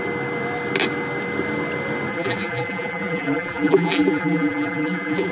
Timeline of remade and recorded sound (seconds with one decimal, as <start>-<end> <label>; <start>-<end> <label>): 0.0-2.1 recorded; 2.1-5.3 remade